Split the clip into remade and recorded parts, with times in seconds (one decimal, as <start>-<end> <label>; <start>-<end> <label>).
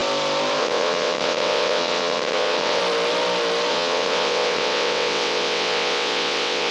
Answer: 0.0-0.6 recorded; 0.6-2.8 remade; 2.8-3.7 recorded; 3.7-6.7 remade